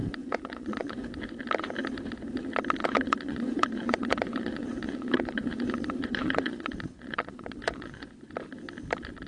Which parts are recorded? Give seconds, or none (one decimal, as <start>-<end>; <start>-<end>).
1.1-2.8; 8.1-9.3